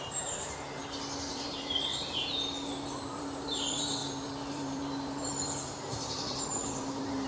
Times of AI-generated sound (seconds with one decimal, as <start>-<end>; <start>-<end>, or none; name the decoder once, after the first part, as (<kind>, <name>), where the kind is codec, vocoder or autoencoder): 0.0-0.8 (vocoder, BigVGAN v2); 1.3-1.9; 2.7-7.3